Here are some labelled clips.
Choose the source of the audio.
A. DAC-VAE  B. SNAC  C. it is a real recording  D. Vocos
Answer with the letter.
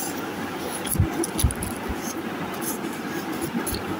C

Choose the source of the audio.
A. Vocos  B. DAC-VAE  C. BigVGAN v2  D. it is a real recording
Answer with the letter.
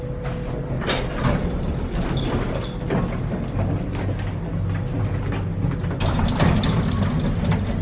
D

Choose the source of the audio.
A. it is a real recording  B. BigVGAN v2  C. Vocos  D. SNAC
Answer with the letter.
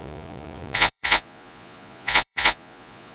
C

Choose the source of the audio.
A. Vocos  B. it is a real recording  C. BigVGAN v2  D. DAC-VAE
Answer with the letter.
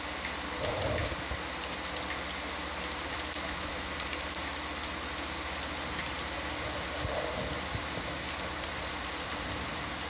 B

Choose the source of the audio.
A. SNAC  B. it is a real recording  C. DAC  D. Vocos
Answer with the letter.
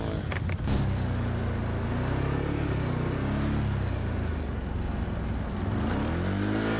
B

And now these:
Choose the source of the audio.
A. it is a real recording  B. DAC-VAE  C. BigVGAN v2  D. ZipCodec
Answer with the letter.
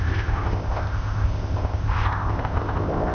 D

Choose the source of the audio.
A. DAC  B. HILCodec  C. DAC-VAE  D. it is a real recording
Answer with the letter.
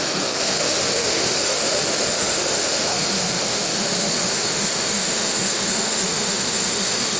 C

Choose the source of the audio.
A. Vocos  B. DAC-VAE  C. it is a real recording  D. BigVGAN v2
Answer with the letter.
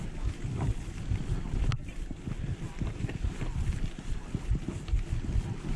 C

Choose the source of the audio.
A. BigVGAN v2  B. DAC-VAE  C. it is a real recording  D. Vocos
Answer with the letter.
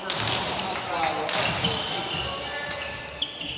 C